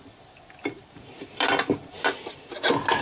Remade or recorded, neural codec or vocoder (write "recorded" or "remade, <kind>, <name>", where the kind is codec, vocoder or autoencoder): recorded